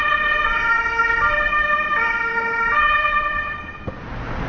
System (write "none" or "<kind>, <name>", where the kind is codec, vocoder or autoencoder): none